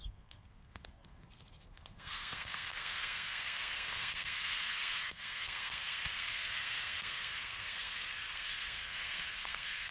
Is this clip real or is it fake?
fake